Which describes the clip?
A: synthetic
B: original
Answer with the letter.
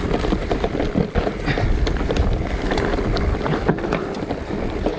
A